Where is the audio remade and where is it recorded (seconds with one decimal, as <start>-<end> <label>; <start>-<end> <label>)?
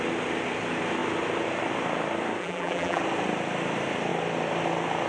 0.0-2.4 recorded; 2.4-3.0 remade; 3.0-5.1 recorded